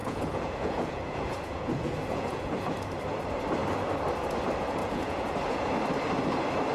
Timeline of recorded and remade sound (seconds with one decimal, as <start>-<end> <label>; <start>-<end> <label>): 0.0-2.8 remade; 2.8-4.8 recorded; 4.8-5.7 remade; 5.7-6.7 recorded